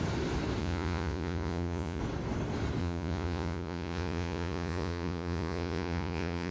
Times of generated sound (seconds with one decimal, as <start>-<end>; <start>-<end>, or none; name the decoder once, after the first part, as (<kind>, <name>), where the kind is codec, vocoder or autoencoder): 0.6-2.0 (vocoder, Vocos); 2.8-6.5